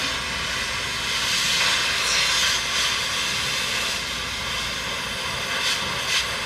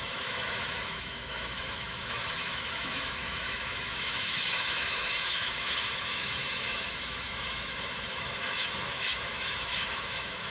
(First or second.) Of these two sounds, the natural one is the first